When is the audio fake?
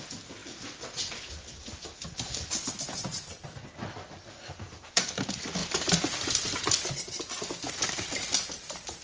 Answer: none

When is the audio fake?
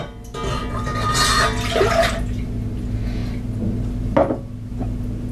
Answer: none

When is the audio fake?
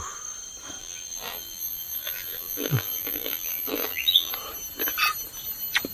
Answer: 0.8-4.3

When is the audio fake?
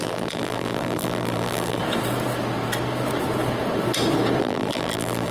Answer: 0.0-1.8; 4.4-5.3